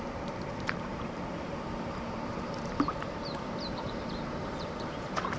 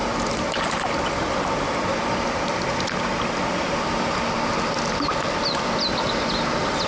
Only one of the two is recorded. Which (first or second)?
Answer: second